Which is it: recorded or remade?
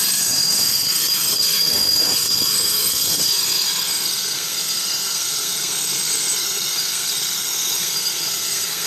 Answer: remade